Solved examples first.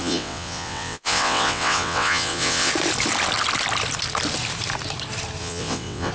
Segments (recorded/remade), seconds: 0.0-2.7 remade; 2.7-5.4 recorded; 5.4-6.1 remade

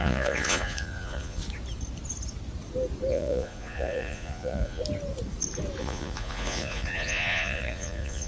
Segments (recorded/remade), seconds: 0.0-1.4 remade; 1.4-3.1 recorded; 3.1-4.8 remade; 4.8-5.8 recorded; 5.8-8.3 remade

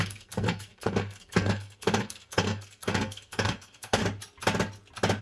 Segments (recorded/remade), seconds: 0.0-4.0 remade; 4.0-5.2 recorded

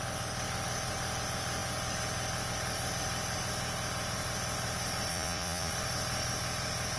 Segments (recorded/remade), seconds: 0.0-5.1 recorded; 5.1-5.7 remade; 5.7-7.0 recorded

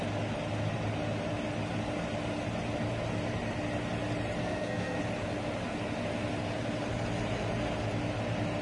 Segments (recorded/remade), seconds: 0.0-4.4 recorded; 4.4-5.0 remade; 5.0-8.6 recorded

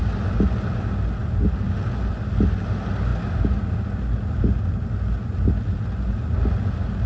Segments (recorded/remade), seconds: 0.0-7.1 recorded